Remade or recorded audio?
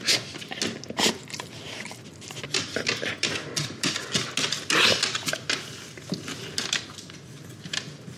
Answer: recorded